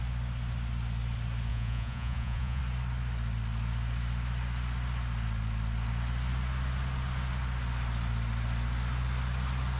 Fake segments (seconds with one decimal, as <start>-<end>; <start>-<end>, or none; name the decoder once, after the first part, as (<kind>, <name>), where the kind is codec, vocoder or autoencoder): 1.5-2.6 (vocoder, Vocos)

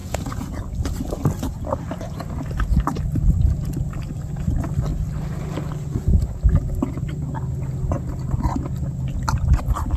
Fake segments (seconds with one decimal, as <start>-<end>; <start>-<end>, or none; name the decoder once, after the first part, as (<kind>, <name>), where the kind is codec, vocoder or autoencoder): 0.0-0.6 (vocoder, Vocos)

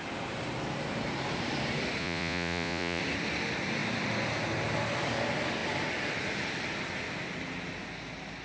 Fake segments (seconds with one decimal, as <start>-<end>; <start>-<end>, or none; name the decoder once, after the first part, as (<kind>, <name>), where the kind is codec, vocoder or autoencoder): 2.0-3.0 (vocoder, Vocos)